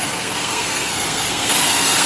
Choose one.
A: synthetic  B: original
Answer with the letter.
A